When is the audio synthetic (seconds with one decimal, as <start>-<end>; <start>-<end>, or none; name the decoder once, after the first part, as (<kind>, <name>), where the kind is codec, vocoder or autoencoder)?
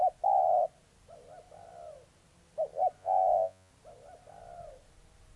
3.0-3.7 (vocoder, Vocos)